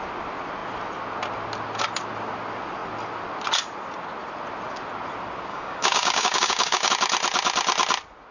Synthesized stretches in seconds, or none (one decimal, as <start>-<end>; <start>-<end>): 5.5-6.9

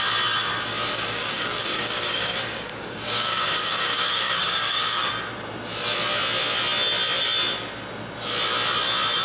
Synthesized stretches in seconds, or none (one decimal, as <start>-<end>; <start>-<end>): 0.9-5.1

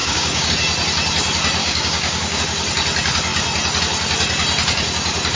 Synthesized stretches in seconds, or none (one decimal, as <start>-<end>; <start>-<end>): 0.0-0.5; 1.6-2.4

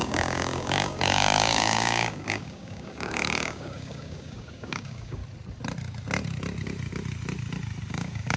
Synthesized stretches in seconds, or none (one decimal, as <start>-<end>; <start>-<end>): 0.0-5.2; 7.9-8.4

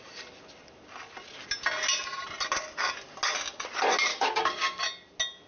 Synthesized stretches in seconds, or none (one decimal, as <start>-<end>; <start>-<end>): 4.1-4.8

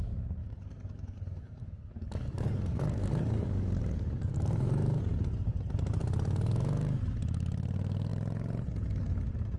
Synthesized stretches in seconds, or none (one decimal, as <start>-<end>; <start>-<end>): 0.4-5.0; 6.0-7.0